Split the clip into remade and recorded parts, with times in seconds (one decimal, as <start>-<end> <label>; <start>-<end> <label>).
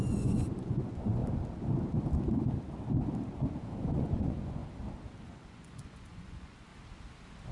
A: 0.0-1.2 remade; 1.2-3.6 recorded; 3.6-4.6 remade; 4.6-5.2 recorded; 5.2-6.7 remade; 6.7-7.5 recorded